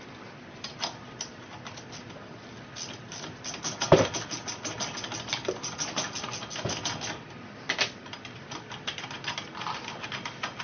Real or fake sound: real